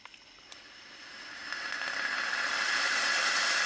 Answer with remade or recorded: recorded